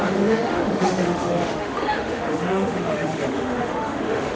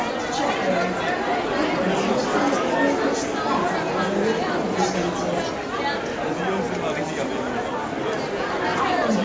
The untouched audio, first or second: second